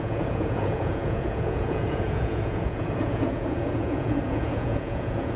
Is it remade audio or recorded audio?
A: remade